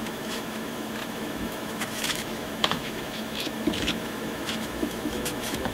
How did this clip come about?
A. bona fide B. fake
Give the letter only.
B